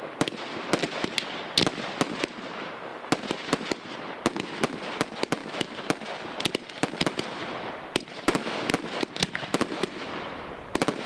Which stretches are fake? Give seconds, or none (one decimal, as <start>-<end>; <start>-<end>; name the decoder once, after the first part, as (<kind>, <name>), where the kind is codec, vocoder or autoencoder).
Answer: 2.9-3.6 (vocoder, BigVGAN v2); 5.4-10.5